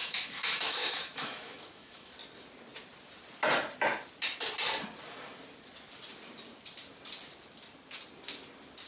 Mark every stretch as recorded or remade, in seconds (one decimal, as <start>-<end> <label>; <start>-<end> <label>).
0.0-2.1 remade; 2.1-8.9 recorded